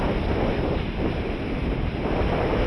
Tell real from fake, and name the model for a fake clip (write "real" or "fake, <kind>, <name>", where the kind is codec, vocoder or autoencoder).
real